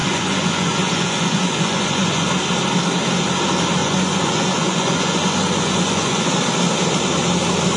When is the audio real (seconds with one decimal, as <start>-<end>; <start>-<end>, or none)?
2.3-3.8; 6.3-7.8